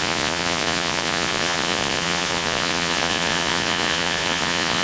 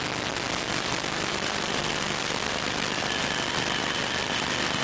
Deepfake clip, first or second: first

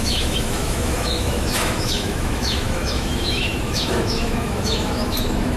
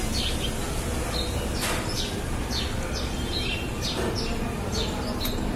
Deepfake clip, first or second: first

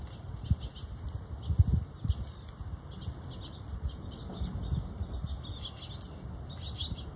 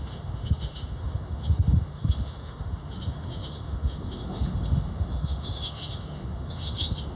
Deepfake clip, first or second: second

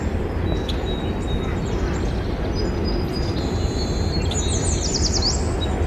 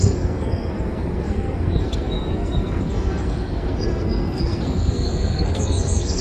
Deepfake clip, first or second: second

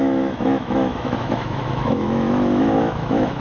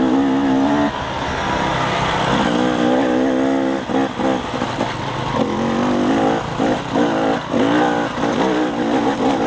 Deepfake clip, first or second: first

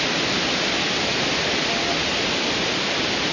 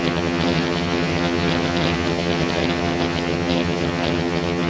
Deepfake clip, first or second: second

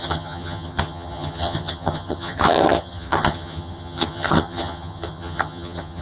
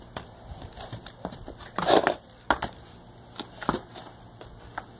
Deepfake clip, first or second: first